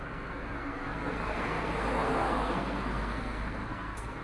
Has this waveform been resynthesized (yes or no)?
yes